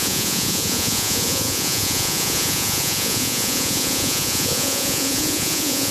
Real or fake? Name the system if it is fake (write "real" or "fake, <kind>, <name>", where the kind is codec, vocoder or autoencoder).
fake, vocoder, Vocos